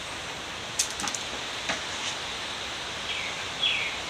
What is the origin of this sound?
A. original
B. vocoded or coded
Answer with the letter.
A